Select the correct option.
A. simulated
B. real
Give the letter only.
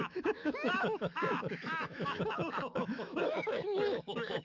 A